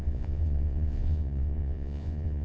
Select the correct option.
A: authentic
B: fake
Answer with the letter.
B